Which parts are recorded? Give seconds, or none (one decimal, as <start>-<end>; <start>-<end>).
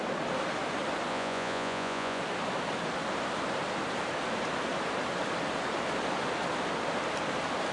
0.0-1.1; 2.2-7.7